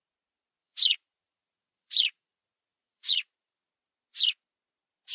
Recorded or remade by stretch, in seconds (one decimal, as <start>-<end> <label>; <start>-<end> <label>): 0.0-0.6 recorded; 0.6-3.7 remade; 3.7-5.1 recorded